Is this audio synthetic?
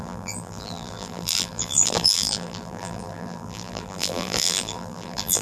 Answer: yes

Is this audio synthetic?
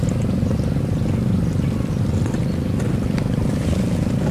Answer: no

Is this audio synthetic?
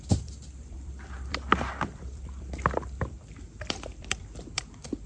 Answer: yes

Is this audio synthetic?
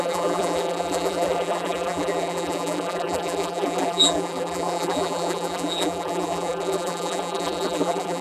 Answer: yes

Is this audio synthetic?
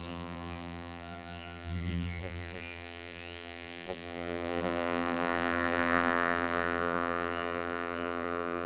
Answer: yes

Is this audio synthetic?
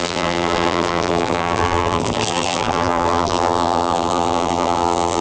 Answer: yes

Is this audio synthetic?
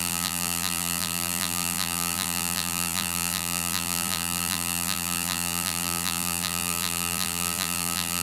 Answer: yes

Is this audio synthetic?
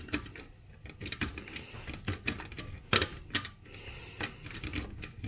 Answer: no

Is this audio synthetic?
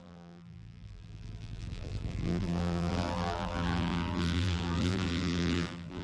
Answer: yes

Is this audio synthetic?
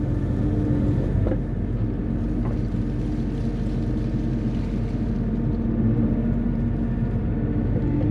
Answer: no